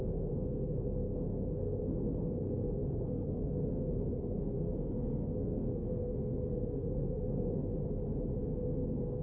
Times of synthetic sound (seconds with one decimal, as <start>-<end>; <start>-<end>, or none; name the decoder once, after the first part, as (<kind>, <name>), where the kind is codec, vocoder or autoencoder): 0.0-7.7 (codec, SNAC); 8.4-9.2